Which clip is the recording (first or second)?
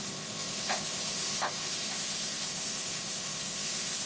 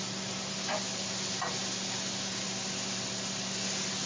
second